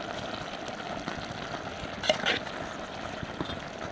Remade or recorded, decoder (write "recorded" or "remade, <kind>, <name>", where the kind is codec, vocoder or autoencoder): recorded